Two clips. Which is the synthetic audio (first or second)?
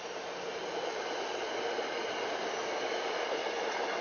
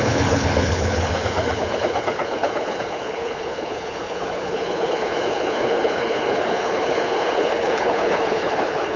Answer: second